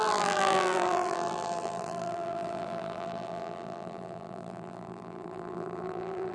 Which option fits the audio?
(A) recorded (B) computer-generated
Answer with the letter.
B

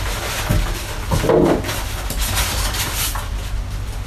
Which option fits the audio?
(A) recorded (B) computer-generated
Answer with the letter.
A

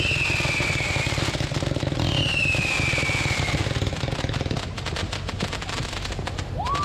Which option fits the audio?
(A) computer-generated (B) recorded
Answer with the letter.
B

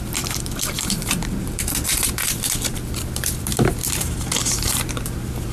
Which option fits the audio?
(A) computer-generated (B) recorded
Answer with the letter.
A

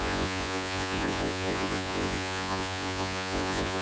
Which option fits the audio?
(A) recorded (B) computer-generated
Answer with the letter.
B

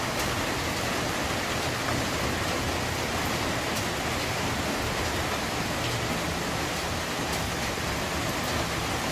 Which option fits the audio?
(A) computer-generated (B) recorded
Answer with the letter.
B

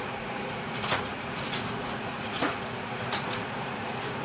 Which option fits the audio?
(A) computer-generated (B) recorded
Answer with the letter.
A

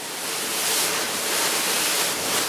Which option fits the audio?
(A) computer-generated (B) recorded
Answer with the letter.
B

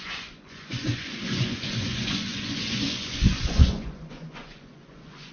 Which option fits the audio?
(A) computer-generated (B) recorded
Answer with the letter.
A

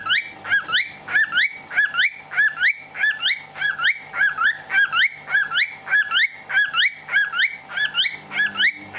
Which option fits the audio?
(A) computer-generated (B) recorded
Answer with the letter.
B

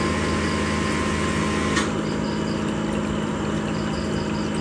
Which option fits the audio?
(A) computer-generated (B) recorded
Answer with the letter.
B